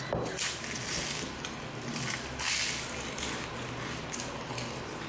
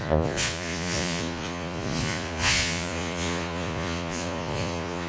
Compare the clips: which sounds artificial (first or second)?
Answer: second